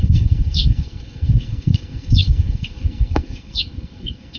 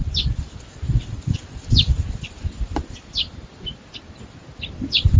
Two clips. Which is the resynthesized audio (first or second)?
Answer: first